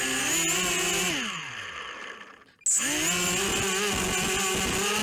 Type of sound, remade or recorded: recorded